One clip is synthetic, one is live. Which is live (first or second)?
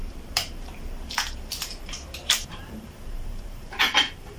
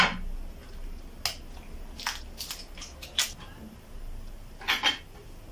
second